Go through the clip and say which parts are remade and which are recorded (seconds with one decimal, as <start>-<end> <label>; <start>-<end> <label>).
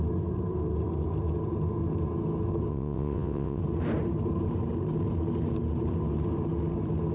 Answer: 0.0-2.7 recorded; 2.7-3.6 remade; 3.6-7.1 recorded